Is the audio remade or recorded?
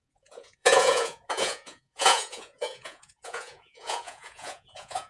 remade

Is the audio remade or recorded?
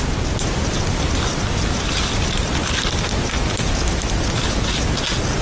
recorded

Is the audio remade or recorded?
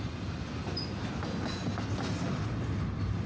recorded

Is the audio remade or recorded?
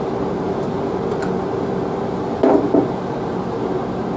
recorded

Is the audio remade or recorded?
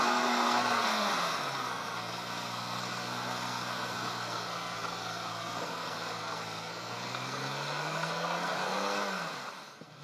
remade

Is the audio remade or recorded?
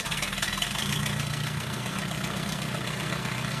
remade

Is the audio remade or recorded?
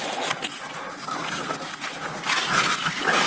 recorded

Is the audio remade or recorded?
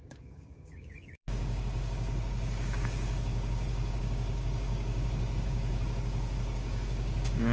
remade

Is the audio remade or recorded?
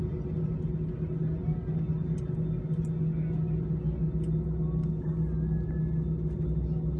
recorded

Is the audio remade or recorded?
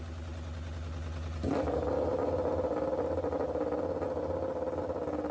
recorded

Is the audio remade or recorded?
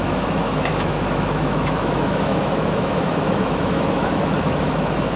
remade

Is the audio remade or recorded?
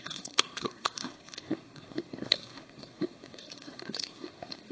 remade